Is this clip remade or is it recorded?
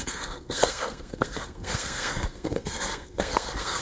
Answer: remade